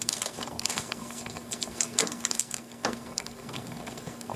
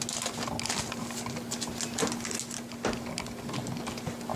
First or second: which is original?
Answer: second